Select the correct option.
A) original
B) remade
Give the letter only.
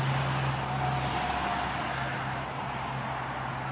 A